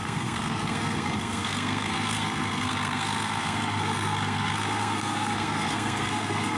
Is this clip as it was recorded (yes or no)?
no